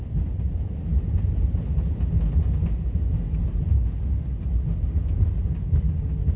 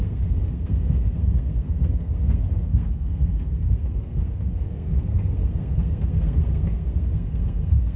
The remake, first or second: second